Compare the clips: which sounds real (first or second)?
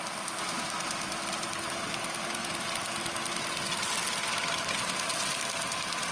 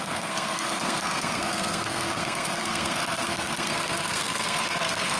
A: first